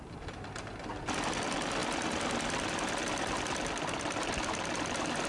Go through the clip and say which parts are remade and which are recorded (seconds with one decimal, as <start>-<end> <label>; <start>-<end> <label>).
0.0-5.3 recorded